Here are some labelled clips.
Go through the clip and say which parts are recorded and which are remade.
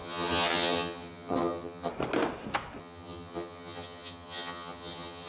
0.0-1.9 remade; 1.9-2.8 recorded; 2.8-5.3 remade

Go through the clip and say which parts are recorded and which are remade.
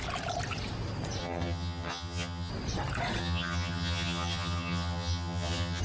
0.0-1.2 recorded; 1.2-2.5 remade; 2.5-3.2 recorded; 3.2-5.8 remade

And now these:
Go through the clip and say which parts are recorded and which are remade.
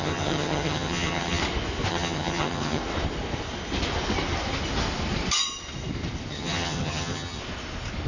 0.0-1.4 remade; 1.4-1.9 recorded; 1.9-2.8 remade; 2.8-6.3 recorded; 6.3-7.4 remade; 7.4-8.1 recorded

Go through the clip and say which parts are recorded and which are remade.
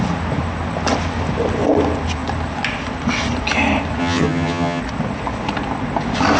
0.0-4.0 recorded; 4.0-4.8 remade; 4.8-6.4 recorded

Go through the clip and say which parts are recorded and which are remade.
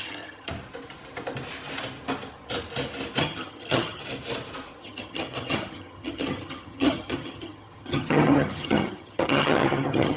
0.0-0.5 remade; 0.5-3.2 recorded; 3.2-4.0 remade; 4.0-4.8 recorded; 4.8-10.2 remade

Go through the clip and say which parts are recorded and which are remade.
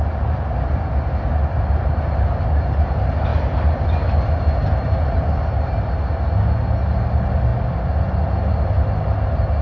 0.0-9.6 recorded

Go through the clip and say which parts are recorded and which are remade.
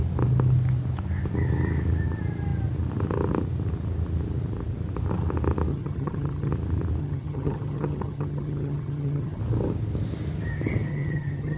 0.0-5.7 recorded; 5.7-6.5 remade; 6.5-7.0 recorded; 7.0-9.4 remade; 9.4-10.9 recorded; 10.9-11.6 remade